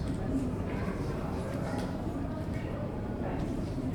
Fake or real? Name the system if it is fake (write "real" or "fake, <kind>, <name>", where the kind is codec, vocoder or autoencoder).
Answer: fake, vocoder, BigVGAN v2